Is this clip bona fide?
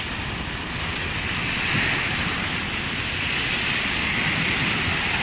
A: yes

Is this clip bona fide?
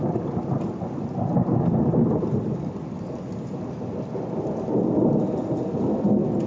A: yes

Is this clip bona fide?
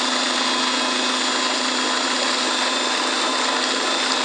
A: yes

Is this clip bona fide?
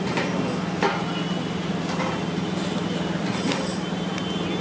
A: yes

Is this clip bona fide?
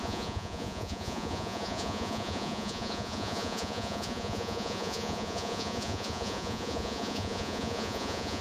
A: no